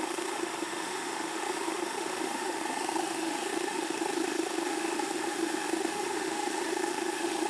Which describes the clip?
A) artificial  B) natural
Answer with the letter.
A